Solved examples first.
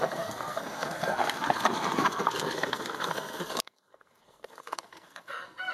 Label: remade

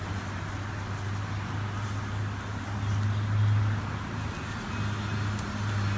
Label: recorded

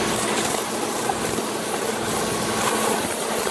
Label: recorded